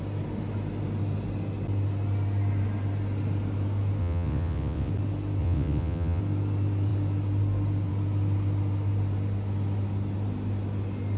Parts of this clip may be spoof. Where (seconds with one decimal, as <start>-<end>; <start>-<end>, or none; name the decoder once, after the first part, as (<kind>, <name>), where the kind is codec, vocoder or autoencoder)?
4.0-4.9 (vocoder, WaveNeXt); 5.4-6.2